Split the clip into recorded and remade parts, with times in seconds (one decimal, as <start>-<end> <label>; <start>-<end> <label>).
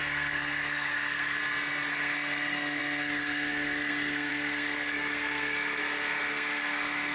0.0-1.4 remade; 1.4-1.9 recorded; 1.9-5.8 remade; 5.8-6.3 recorded; 6.3-7.1 remade